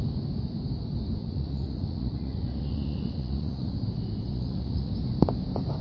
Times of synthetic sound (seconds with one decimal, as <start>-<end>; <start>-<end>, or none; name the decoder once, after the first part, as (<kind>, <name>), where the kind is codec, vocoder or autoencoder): 1.2-3.7 (vocoder, Vocos); 4.3-4.9